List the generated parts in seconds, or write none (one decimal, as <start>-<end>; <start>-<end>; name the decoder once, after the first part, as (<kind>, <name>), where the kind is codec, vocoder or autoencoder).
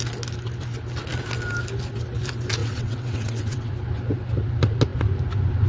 2.6-3.7 (vocoder, WaveNeXt)